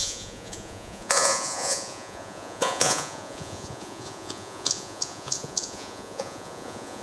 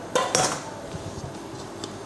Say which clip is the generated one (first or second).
first